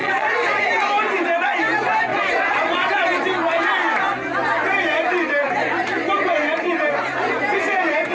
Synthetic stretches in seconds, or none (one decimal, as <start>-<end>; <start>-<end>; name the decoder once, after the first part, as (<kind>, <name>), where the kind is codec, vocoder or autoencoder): 0.0-0.6 (vocoder, WaveNeXt); 2.1-3.0